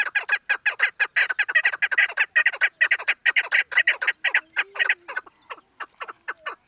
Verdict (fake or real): real